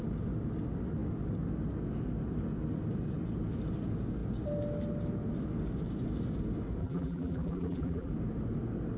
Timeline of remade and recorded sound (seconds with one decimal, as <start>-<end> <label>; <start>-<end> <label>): 0.0-6.8 recorded; 6.8-8.1 remade; 8.1-9.0 recorded